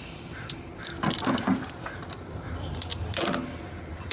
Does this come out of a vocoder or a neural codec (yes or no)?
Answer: yes